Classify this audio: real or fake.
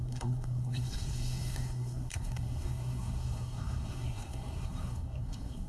fake